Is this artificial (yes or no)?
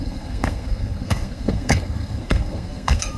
yes